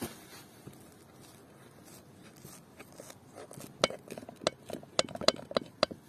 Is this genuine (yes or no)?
yes